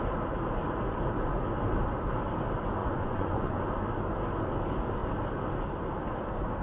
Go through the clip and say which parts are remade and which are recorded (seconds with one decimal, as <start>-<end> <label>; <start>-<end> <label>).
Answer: 0.0-2.8 recorded; 2.8-3.6 remade; 3.6-6.6 recorded